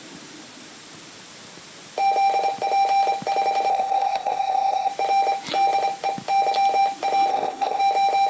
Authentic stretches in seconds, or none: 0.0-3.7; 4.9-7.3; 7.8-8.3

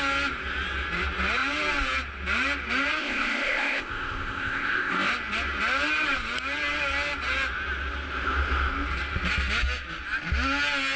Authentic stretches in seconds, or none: 0.0-3.0; 5.1-11.0

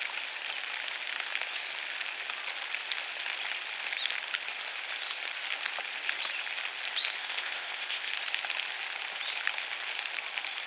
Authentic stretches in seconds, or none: 0.0-7.2; 8.1-10.7

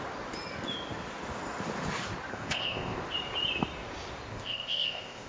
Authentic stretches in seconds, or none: 0.0-2.3; 3.0-4.3

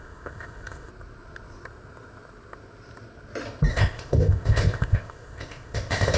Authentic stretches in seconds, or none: 0.9-3.7

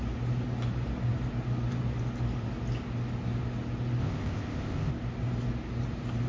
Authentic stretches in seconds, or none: 0.0-4.0; 4.9-6.3

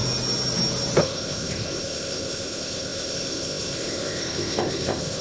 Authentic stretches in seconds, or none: 0.0-1.0

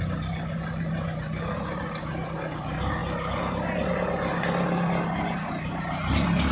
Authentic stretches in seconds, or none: 0.0-6.5